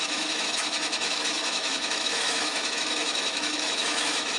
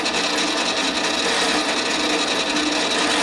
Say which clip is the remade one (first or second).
first